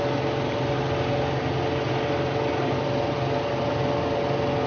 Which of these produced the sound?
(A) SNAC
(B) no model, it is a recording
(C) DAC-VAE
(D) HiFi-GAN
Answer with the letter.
B